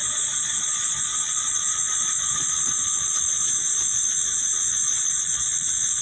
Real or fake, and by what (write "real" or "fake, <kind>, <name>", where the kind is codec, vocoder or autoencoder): fake, vocoder, Vocos